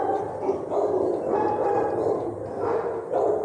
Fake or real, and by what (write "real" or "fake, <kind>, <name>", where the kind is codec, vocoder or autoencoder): real